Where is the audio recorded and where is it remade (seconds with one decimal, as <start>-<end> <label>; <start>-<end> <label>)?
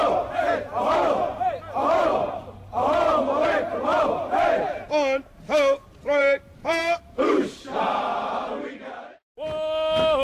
0.0-6.2 recorded; 6.2-7.8 remade; 7.8-10.2 recorded